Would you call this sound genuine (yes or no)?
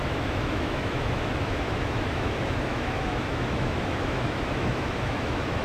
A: no